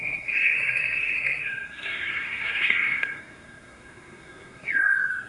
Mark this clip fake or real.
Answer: fake